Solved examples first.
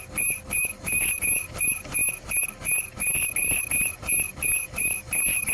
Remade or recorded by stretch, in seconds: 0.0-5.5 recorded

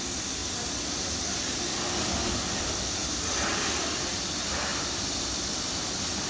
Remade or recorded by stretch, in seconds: 0.0-6.3 recorded

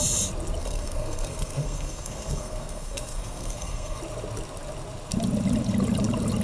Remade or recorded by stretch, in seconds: 0.0-0.6 recorded; 0.6-4.0 remade; 4.0-6.4 recorded

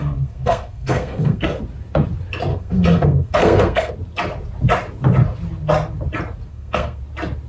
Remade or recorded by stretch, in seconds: 0.0-1.6 remade; 1.6-2.5 recorded; 2.5-3.9 remade; 3.9-6.5 recorded; 6.5-7.0 remade; 7.0-7.5 recorded